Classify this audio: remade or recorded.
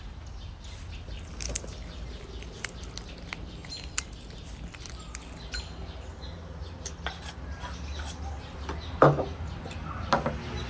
recorded